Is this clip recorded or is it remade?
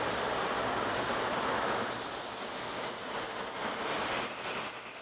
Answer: recorded